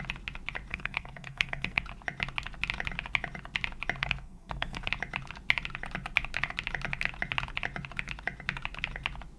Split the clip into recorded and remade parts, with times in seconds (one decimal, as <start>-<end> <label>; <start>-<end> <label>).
0.0-0.7 recorded; 0.7-1.8 remade; 1.8-4.0 recorded; 4.0-4.9 remade; 4.9-9.4 recorded